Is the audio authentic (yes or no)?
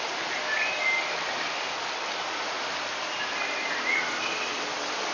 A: yes